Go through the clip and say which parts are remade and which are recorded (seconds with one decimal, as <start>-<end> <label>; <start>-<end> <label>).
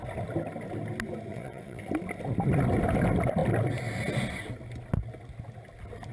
0.0-1.3 recorded; 1.3-1.9 remade; 1.9-6.1 recorded